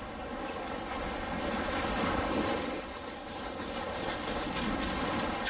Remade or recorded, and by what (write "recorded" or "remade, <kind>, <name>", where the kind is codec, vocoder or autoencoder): recorded